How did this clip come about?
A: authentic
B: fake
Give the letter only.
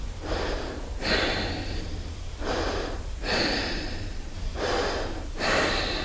B